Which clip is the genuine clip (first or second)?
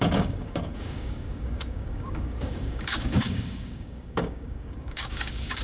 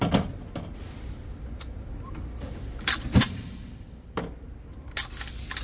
second